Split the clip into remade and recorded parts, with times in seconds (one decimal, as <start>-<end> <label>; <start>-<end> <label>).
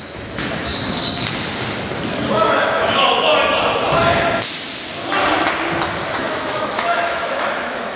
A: 0.0-0.7 remade; 0.7-2.3 recorded; 2.3-3.3 remade; 3.3-6.1 recorded; 6.1-8.0 remade